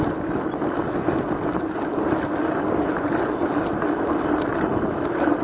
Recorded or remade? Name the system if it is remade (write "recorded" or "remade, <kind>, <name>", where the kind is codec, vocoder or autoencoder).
recorded